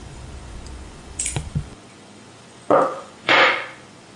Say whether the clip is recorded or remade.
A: remade